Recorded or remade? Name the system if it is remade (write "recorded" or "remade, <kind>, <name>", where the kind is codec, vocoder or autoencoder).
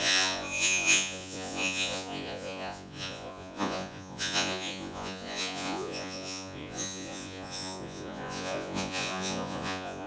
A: remade, vocoder, Vocos